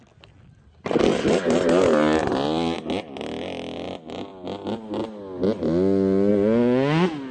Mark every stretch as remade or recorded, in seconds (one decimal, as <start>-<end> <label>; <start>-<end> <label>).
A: 0.0-7.3 recorded